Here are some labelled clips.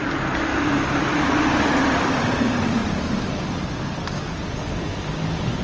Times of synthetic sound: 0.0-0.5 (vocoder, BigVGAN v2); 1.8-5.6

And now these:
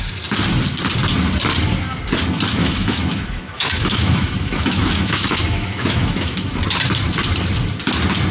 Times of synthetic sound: 2.6-6.6 (autoencoder, DAC-VAE)